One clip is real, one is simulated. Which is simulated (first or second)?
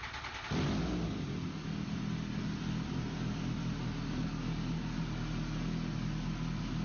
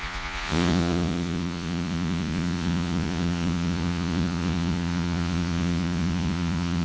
second